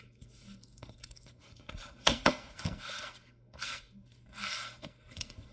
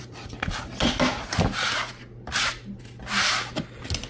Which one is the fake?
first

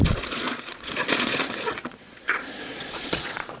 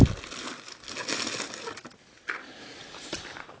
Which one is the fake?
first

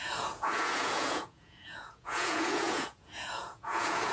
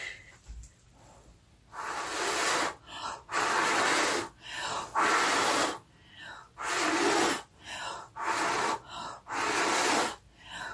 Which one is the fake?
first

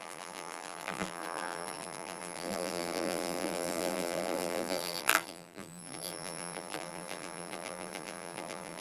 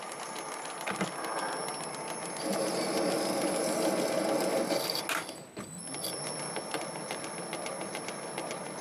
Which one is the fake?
first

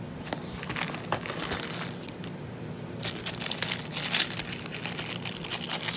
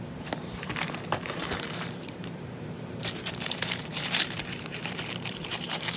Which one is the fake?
second